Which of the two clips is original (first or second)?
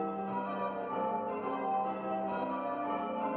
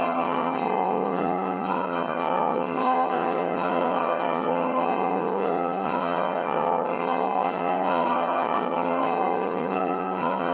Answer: first